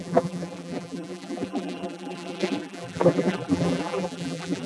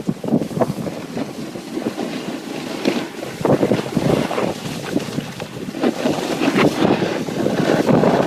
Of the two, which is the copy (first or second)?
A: first